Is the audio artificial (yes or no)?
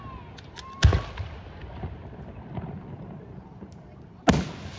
no